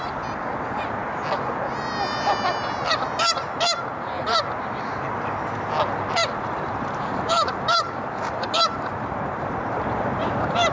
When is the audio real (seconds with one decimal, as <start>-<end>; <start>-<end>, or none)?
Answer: 0.0-6.2